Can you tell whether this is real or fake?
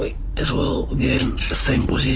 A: fake